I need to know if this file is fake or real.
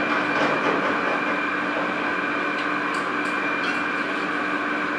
real